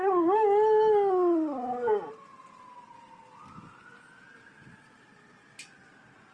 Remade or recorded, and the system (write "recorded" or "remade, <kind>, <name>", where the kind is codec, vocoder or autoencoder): recorded